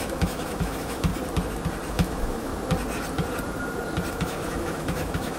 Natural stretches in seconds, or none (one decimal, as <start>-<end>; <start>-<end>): 1.1-1.9; 2.5-4.1